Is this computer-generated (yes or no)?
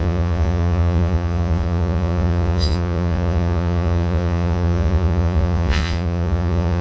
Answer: yes